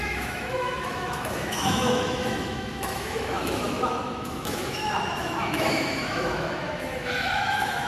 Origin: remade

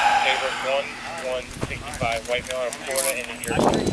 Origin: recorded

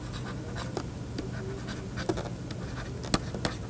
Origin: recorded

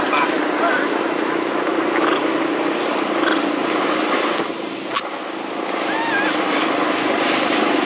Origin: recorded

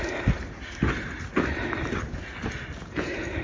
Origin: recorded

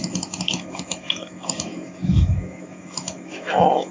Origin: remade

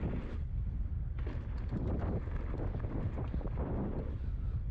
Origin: recorded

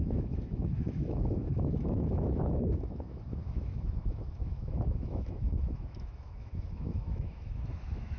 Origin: remade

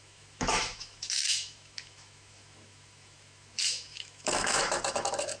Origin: remade